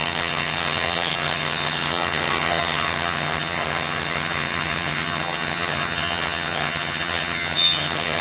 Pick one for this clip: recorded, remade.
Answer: remade